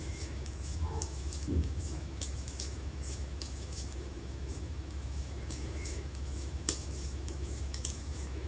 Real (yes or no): no